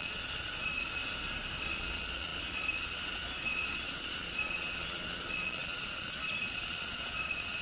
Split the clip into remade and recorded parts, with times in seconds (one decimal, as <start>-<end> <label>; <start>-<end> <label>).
0.0-1.0 remade; 1.0-1.6 recorded; 1.6-7.6 remade